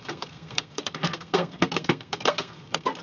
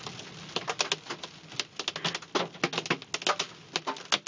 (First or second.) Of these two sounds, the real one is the second